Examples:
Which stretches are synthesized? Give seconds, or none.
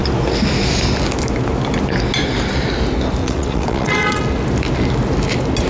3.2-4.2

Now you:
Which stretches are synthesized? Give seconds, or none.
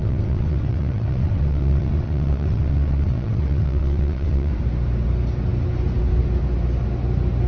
0.0-4.5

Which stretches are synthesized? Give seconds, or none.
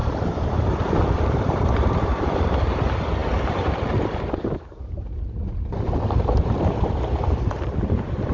none